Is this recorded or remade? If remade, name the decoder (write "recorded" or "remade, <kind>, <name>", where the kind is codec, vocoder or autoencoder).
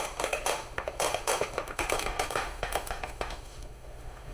remade, autoencoder, DAC-VAE